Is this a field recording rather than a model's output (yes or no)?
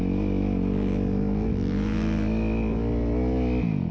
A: yes